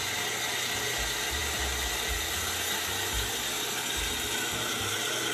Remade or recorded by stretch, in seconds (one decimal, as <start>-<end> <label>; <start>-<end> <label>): 0.0-5.3 recorded